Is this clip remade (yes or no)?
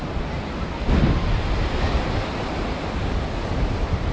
no